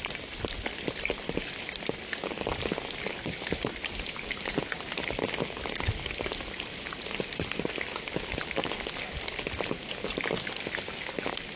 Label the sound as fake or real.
real